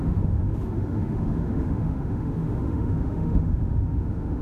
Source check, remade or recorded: remade